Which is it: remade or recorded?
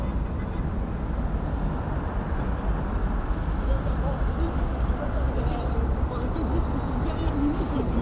recorded